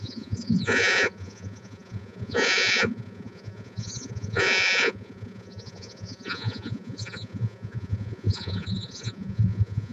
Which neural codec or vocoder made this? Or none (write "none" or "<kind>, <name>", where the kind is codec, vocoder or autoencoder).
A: vocoder, Vocos